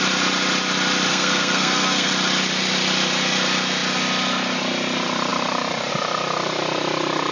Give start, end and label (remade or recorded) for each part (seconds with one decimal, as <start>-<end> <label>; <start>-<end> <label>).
0.0-1.1 recorded; 1.1-2.1 remade; 2.1-7.3 recorded